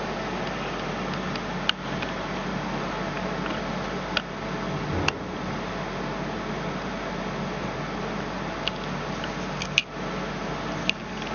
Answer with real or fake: real